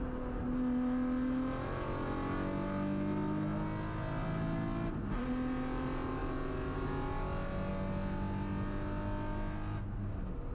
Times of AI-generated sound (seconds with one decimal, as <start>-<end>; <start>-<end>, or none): none